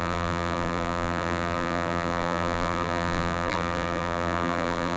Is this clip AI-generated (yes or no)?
yes